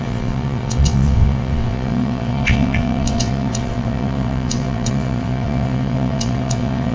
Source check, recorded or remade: remade